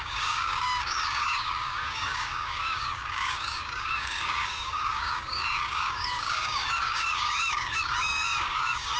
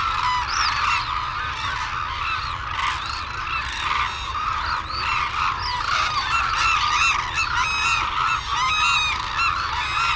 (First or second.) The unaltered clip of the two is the second